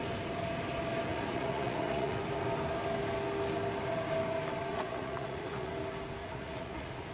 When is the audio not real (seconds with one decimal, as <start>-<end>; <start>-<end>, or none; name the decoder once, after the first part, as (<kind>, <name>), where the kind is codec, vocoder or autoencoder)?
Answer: 1.1-2.2 (vocoder, Vocos); 4.7-5.7; 6.2-7.1